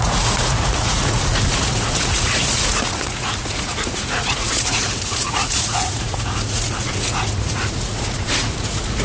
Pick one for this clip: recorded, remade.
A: remade